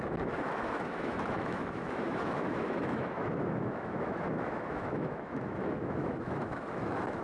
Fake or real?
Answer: fake